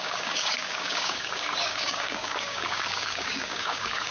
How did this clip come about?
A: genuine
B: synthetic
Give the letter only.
B